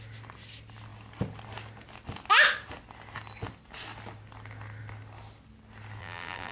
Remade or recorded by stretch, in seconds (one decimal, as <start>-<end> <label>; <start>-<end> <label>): 0.0-6.0 recorded; 6.0-6.5 remade